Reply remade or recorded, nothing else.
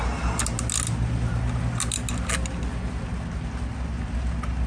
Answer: recorded